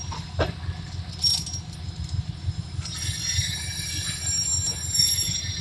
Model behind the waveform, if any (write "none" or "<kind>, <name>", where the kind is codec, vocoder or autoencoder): none